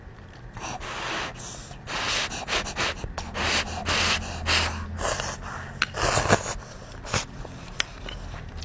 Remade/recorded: recorded